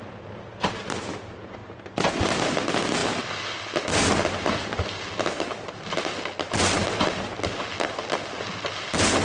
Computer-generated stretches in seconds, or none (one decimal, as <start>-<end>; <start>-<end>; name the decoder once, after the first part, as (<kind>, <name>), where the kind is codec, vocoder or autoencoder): none